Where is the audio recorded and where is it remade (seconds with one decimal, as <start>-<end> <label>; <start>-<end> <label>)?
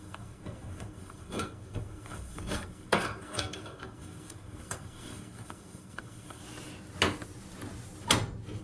0.0-6.4 remade; 6.4-8.6 recorded